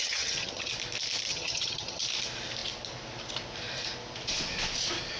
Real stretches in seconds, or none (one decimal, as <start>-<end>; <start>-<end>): 0.7-1.3; 2.0-5.2